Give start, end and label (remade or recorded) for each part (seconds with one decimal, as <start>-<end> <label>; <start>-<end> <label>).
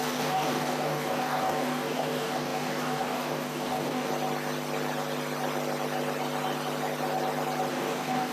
0.0-4.1 remade; 4.1-7.7 recorded; 7.7-8.3 remade